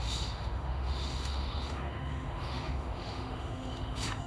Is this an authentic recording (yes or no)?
no